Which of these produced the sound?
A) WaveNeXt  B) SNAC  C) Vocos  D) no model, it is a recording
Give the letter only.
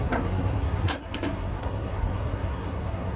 B